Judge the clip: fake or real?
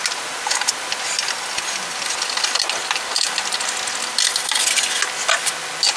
real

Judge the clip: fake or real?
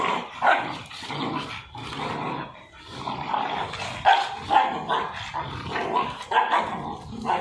real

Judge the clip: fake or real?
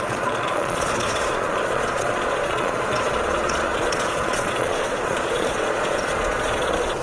fake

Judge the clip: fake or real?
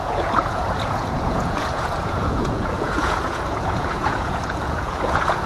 fake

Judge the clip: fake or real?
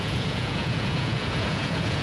fake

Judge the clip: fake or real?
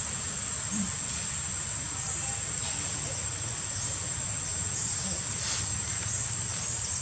real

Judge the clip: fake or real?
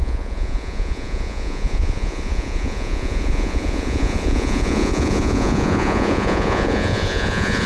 fake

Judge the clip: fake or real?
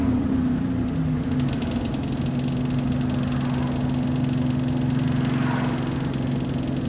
real